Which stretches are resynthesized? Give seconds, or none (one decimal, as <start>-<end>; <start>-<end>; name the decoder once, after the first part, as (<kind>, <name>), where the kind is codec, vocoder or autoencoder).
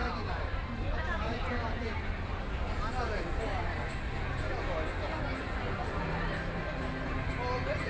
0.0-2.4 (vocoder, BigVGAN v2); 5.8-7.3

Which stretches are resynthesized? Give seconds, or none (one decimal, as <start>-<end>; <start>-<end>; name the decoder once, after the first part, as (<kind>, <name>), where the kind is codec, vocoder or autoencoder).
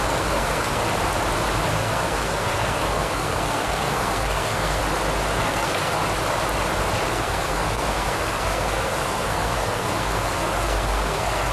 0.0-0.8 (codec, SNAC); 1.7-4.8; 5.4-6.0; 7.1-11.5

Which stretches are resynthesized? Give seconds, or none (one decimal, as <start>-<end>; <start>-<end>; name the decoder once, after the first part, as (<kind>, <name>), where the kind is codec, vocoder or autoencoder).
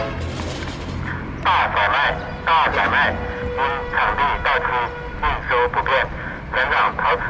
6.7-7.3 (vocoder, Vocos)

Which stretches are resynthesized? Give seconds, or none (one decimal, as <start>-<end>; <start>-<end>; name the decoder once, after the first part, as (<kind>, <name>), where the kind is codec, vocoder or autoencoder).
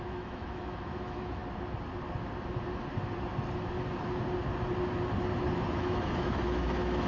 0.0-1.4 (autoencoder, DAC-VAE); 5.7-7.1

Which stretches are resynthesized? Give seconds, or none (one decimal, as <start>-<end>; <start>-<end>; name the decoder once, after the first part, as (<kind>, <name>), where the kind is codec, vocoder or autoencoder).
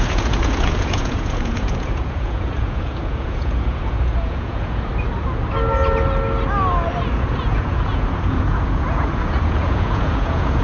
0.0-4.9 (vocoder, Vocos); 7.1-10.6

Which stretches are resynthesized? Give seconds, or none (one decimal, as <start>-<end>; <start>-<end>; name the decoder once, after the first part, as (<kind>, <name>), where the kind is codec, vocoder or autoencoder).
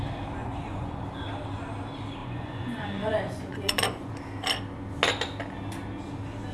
0.4-1.0 (vocoder, Vocos); 2.2-4.1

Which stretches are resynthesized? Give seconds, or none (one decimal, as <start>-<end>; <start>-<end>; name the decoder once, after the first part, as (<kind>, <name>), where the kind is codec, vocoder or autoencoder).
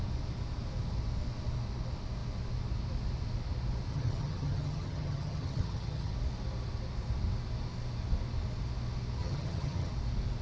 3.9-6.1 (vocoder, HiFi-GAN); 9.2-9.9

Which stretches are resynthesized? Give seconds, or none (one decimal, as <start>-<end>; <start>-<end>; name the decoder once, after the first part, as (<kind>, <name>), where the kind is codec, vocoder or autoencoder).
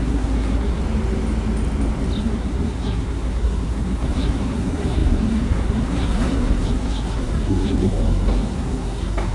0.0-0.8 (codec, SNAC); 2.2-9.3